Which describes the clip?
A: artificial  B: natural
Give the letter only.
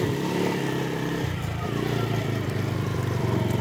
A